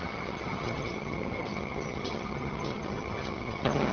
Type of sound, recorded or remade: remade